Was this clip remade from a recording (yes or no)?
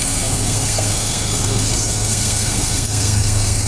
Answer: yes